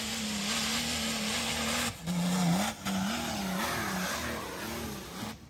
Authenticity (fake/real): real